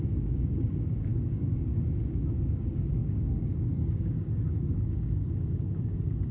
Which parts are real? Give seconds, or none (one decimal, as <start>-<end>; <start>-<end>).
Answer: none